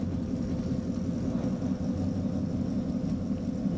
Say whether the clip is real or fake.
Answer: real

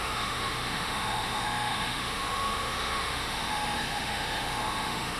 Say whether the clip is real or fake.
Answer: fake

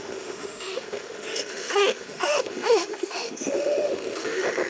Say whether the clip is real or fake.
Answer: fake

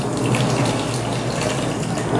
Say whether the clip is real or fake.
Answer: real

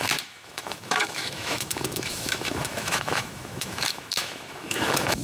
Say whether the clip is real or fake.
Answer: fake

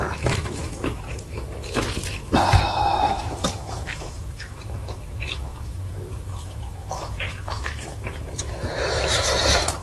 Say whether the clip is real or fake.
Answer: fake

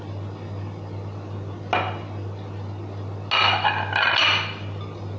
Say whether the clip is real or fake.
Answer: real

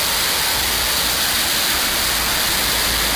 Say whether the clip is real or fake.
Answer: real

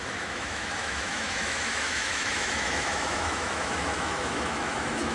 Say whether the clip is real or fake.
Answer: fake